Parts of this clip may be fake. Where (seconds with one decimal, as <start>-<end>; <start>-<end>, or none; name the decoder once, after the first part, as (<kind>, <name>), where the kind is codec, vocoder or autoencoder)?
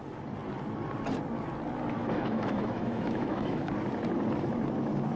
2.0-3.7 (autoencoder, DAC-VAE)